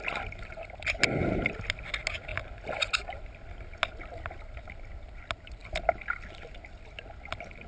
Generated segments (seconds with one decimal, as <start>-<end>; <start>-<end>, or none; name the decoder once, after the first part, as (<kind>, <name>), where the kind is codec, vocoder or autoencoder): none